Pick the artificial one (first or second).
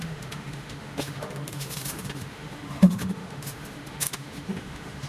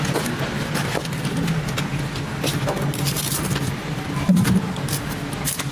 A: first